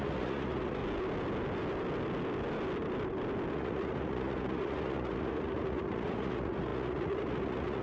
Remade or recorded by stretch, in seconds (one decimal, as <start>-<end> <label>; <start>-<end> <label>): 0.0-0.8 remade; 0.8-3.5 recorded; 3.5-7.8 remade